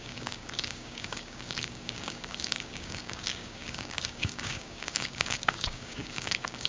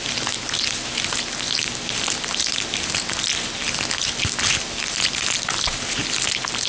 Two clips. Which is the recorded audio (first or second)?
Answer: second